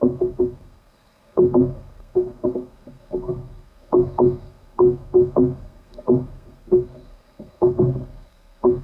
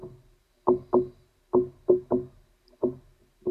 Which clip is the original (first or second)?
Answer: second